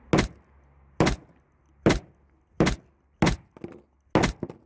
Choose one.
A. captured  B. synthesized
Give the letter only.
A